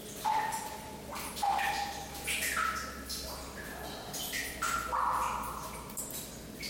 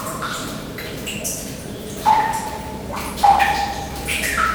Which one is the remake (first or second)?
second